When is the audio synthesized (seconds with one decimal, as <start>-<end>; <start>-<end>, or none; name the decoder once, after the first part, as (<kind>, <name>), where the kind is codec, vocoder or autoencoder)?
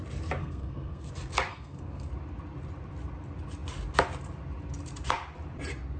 0.4-1.1 (codec, SNAC); 1.5-2.1